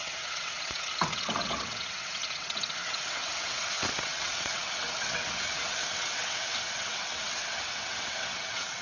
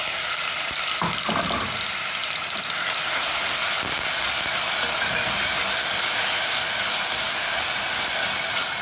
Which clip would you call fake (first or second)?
first